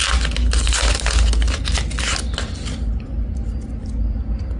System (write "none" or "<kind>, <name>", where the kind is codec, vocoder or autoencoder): none